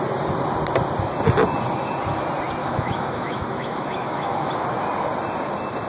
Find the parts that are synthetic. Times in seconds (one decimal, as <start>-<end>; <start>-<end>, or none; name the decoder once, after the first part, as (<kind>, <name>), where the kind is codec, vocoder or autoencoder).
2.6-4.5 (autoencoder, DAC-VAE)